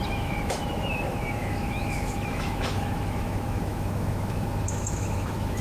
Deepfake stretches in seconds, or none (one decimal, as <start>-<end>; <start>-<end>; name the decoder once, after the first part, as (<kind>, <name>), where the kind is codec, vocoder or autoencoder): 0.0-5.6 (autoencoder, DAC-VAE)